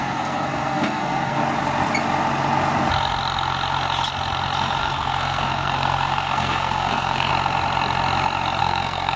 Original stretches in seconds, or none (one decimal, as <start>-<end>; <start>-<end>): 1.4-4.8; 7.3-8.6

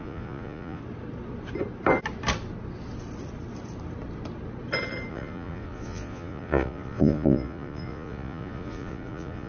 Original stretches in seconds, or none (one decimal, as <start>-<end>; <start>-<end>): 0.8-5.1

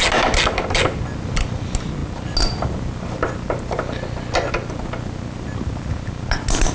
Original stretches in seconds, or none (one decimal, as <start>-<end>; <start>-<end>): 0.0-6.7

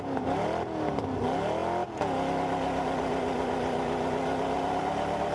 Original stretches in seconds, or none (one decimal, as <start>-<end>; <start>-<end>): 0.0-5.3

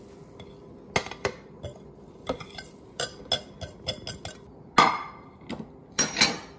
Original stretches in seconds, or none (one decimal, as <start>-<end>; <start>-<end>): 0.0-1.0; 3.2-6.6

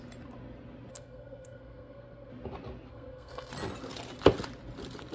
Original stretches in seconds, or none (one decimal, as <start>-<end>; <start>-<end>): 0.0-0.9; 2.3-2.9; 3.5-5.1